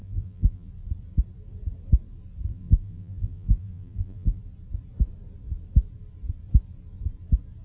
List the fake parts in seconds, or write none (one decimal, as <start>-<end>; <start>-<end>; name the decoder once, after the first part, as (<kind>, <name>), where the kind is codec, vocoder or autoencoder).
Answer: 0.0-0.7 (vocoder, BigVGAN v2); 2.5-4.4